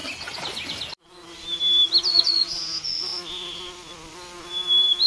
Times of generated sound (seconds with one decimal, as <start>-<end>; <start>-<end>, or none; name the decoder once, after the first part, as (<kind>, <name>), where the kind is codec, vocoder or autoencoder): 2.1-2.6 (vocoder, Vocos)